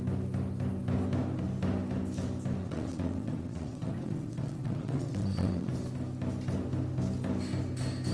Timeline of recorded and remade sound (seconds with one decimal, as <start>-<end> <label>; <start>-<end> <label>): 0.0-2.6 recorded; 2.6-5.7 remade; 5.7-8.1 recorded